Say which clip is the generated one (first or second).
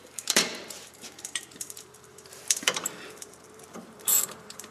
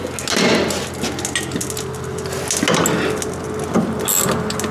first